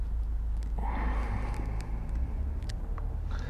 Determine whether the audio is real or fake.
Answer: real